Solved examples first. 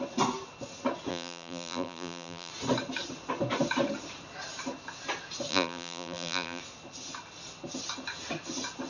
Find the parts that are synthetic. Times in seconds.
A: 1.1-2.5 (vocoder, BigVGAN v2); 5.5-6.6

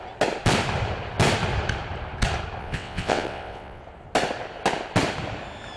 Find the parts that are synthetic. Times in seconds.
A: 2.6-3.8 (vocoder, WaveNeXt)

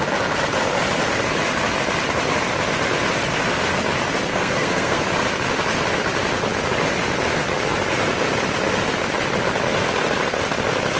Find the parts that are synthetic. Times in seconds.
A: 4.3-5.0 (codec, SNAC)

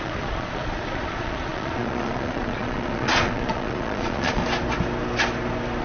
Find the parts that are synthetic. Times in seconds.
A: 0.0-4.4 (vocoder, Vocos)

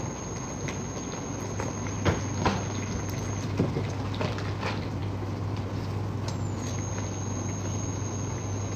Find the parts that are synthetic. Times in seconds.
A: none